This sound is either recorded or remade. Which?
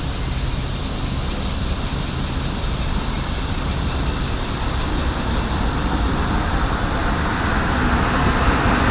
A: recorded